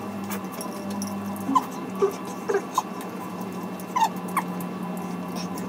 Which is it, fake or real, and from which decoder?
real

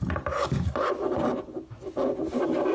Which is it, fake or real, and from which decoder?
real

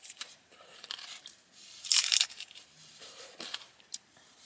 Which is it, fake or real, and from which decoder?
fake, vocoder, BigVGAN v2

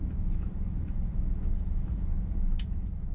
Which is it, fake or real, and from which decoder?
fake, autoencoder, DAC-VAE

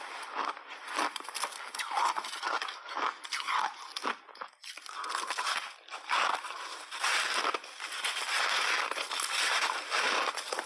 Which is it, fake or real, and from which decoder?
real